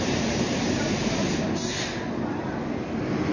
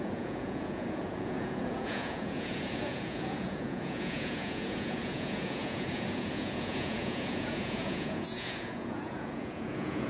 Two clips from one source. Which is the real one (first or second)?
first